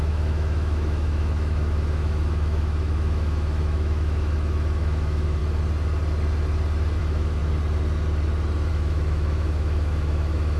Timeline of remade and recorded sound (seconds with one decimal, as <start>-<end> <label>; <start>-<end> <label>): 0.0-5.4 remade; 5.4-7.0 recorded; 7.0-7.4 remade; 7.4-8.7 recorded; 8.7-10.6 remade